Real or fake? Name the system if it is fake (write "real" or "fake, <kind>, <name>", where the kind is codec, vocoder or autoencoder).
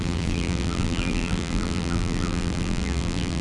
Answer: fake, vocoder, BigVGAN v2